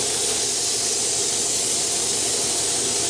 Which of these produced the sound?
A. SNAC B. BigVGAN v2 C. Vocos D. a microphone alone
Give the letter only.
D